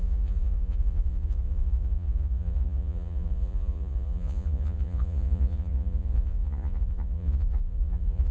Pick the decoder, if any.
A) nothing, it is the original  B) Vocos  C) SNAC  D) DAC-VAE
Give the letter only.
B